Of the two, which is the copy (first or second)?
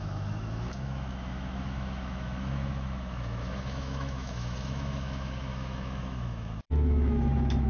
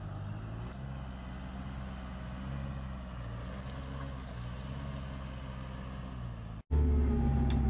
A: first